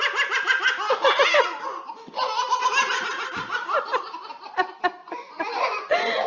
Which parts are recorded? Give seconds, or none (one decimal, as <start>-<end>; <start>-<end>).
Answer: 0.0-5.0